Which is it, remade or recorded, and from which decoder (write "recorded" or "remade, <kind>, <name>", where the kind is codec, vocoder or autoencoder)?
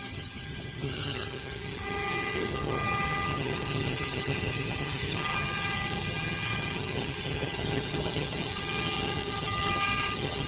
remade, vocoder, HiFi-GAN